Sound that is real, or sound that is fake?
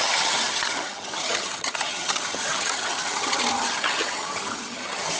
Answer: fake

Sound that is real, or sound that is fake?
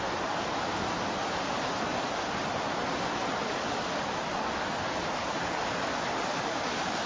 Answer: real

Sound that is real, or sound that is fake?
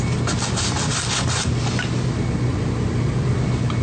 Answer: real